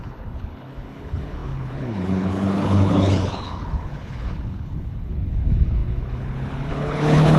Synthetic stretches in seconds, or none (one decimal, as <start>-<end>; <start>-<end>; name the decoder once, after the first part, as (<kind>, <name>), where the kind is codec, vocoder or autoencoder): 0.0-7.4 (codec, HILCodec)